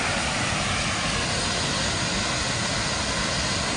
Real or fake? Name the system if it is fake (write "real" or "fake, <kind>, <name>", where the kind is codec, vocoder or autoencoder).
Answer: real